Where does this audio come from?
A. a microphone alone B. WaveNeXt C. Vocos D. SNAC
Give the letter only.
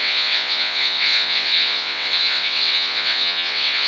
B